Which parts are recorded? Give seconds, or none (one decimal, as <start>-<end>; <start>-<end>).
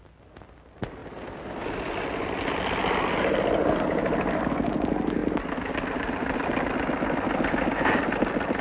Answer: 0.0-8.6